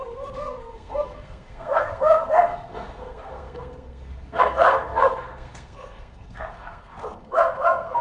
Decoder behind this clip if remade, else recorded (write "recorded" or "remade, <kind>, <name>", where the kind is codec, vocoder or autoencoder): remade, codec, SNAC